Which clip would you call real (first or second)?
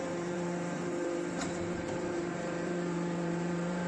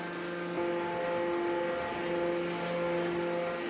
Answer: second